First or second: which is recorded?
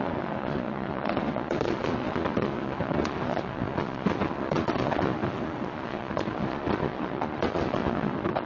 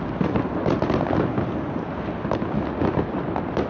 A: second